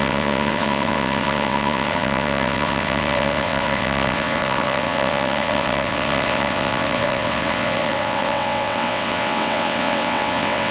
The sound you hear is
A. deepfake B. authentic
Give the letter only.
A